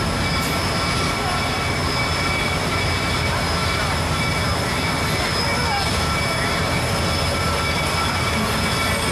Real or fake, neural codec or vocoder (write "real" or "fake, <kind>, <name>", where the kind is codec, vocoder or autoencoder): real